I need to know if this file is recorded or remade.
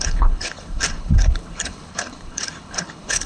remade